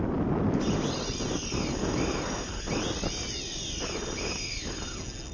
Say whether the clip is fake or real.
real